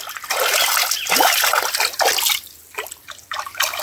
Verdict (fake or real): real